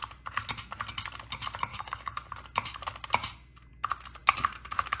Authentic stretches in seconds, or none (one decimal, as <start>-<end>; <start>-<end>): 0.0-1.7; 2.3-5.0